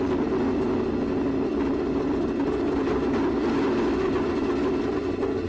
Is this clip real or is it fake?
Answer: real